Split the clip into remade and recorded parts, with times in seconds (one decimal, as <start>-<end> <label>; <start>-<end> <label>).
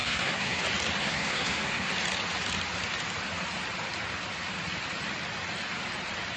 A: 0.0-0.6 remade; 0.6-1.0 recorded; 1.0-1.9 remade; 1.9-6.4 recorded